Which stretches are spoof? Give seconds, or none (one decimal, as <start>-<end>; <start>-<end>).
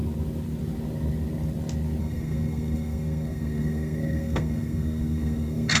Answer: 2.0-5.8